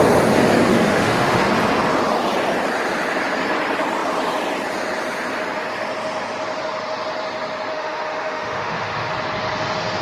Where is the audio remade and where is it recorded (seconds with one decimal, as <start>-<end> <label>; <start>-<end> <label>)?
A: 0.0-0.7 recorded; 0.7-1.4 remade; 1.4-7.7 recorded; 7.7-9.1 remade; 9.1-10.0 recorded